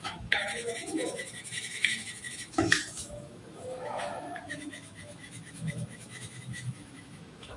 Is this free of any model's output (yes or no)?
no